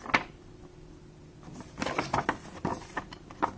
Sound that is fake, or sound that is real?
real